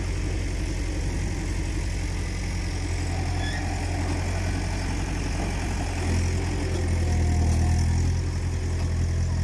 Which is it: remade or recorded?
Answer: recorded